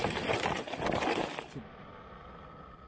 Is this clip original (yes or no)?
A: yes